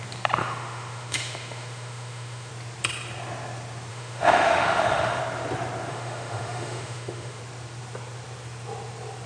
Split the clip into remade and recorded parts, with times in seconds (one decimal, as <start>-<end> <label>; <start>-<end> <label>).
0.0-0.4 recorded; 0.4-2.5 remade; 2.5-3.9 recorded; 3.9-5.2 remade; 5.2-5.9 recorded; 5.9-7.4 remade; 7.4-9.3 recorded